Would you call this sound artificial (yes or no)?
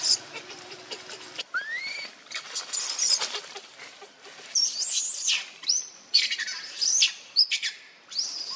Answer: yes